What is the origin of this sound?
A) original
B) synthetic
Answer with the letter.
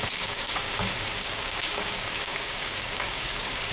B